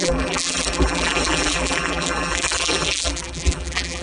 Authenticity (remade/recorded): remade